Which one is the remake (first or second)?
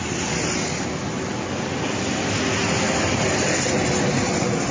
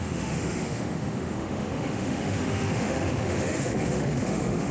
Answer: second